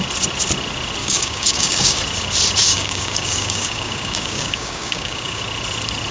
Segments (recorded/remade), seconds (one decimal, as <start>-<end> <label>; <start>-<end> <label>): 0.0-1.0 recorded; 1.0-2.0 remade; 2.0-2.6 recorded; 2.6-5.4 remade; 5.4-6.1 recorded